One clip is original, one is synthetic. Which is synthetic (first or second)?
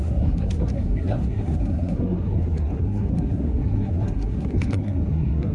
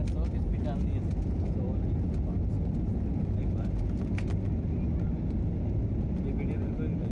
first